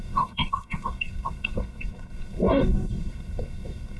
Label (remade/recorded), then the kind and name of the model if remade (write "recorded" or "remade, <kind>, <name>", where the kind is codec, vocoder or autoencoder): remade, codec, SNAC